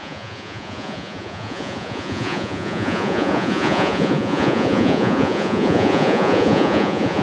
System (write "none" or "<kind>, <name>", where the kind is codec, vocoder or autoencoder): vocoder, Vocos